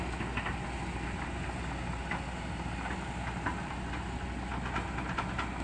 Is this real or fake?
real